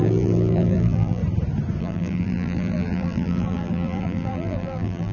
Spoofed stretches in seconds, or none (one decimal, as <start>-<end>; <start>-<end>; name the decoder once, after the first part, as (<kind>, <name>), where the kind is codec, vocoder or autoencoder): 0.0-1.2 (vocoder, BigVGAN v2); 1.8-5.1